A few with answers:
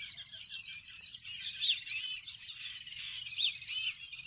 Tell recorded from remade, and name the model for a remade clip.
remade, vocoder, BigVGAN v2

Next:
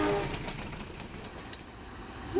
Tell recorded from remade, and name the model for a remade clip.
recorded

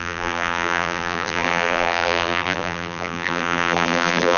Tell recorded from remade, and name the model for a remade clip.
remade, vocoder, BigVGAN v2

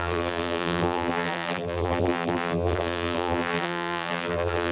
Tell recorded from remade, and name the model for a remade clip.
remade, vocoder, BigVGAN v2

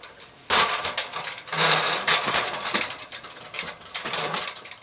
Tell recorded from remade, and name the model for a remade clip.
remade, vocoder, BigVGAN v2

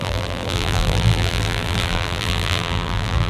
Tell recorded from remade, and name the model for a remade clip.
remade, vocoder, BigVGAN v2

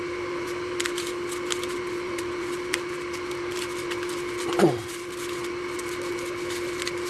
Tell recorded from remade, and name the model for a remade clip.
recorded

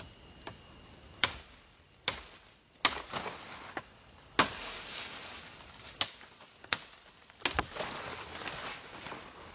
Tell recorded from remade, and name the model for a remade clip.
recorded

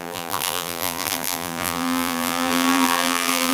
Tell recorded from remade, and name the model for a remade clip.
remade, vocoder, BigVGAN v2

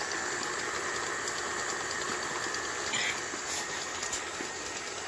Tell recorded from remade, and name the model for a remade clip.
recorded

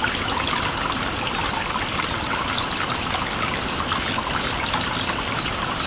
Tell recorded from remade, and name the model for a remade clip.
recorded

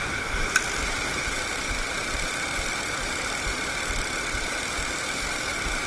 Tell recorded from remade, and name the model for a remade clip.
recorded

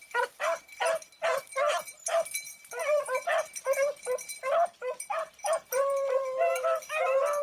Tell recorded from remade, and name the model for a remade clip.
remade, vocoder, BigVGAN v2